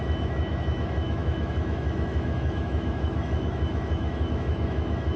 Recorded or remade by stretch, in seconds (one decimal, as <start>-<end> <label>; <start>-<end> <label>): 0.0-5.2 remade